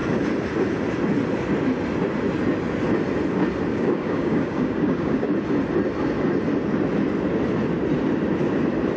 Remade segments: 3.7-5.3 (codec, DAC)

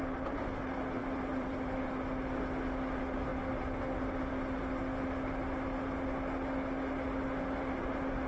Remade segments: 1.0-1.6 (vocoder, BigVGAN v2)